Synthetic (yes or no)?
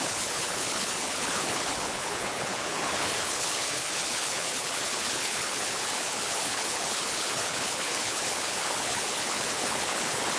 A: yes